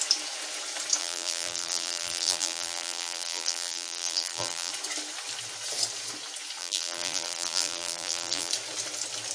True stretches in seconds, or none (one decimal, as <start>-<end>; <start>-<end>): 0.0-1.0; 4.7-6.6; 8.5-9.3

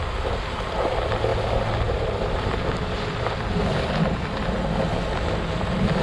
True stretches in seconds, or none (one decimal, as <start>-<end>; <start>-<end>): 0.0-6.0

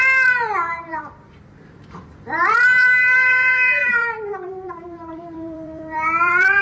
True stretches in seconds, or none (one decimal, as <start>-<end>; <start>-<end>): none

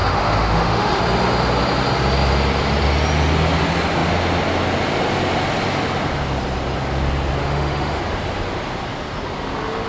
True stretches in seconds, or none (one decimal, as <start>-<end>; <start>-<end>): 1.0-7.4; 8.0-9.9

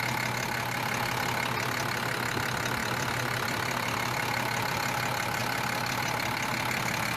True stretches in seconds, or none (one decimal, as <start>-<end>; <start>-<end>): 0.0-2.8; 4.7-7.2

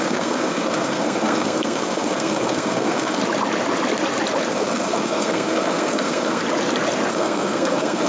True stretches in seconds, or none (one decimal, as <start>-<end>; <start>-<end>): 3.2-4.5; 6.4-7.1

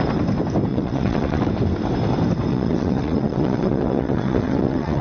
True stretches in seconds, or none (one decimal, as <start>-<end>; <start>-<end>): 0.0-0.7; 1.5-2.5

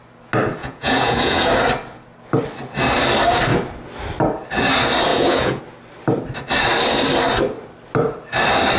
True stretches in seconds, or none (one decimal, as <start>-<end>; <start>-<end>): 0.0-0.6; 1.5-5.1; 5.6-8.8